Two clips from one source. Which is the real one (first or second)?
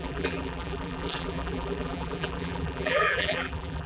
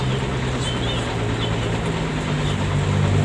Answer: second